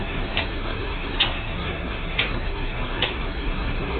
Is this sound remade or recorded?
remade